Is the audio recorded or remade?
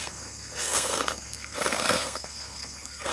remade